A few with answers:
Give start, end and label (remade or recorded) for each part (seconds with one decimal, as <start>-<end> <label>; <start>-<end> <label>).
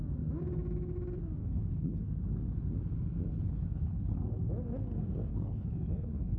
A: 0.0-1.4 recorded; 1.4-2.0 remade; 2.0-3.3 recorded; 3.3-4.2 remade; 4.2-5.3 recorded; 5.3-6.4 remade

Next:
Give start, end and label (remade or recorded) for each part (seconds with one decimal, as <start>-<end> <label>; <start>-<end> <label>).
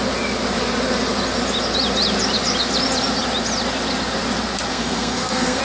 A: 0.0-4.7 recorded; 4.7-5.6 remade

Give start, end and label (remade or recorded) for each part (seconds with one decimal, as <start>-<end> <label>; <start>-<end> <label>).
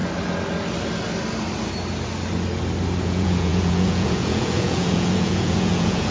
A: 0.0-3.0 recorded; 3.0-6.1 remade